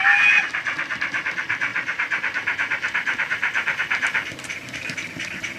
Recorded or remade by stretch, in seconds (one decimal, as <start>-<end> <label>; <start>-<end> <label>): 0.0-1.7 recorded; 1.7-5.1 remade; 5.1-5.6 recorded